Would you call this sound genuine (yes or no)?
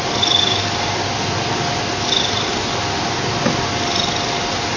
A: yes